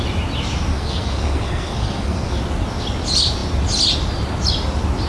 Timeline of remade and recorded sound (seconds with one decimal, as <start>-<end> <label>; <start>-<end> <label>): 0.0-0.7 recorded; 0.7-2.4 remade; 2.4-5.1 recorded